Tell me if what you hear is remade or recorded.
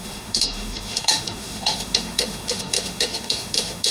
remade